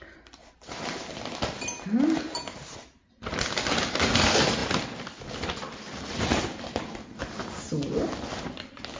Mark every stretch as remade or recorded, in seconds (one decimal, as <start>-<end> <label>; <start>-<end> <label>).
0.0-9.0 recorded

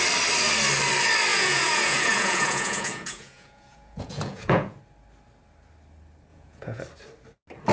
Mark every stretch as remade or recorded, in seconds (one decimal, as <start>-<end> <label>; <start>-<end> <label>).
0.0-1.3 recorded; 1.3-4.8 remade; 4.8-6.3 recorded; 6.3-6.8 remade; 6.8-7.7 recorded

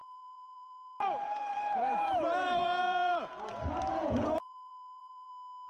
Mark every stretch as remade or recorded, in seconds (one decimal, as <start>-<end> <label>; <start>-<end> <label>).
0.0-3.4 remade; 3.4-3.9 recorded; 3.9-5.3 remade; 5.3-5.7 recorded

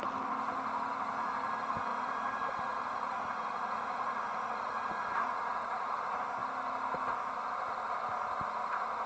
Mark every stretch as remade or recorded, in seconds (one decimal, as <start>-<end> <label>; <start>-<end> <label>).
0.0-1.9 recorded; 1.9-6.0 remade; 6.0-9.1 recorded

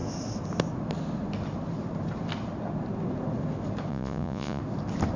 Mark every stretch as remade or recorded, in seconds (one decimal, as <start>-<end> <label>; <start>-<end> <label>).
0.0-3.9 recorded; 3.9-4.6 remade; 4.6-5.2 recorded

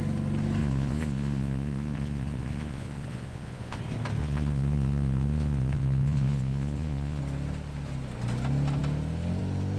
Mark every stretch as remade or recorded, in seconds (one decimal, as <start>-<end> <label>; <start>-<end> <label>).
0.0-0.6 recorded; 0.6-3.8 remade; 3.8-4.2 recorded; 4.2-7.2 remade; 7.2-9.8 recorded

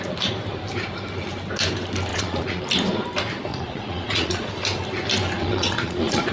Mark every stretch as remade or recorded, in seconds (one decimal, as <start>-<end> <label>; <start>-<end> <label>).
0.0-2.1 recorded; 2.1-2.6 remade; 2.6-3.5 recorded; 3.5-4.5 remade; 4.5-5.4 recorded; 5.4-6.3 remade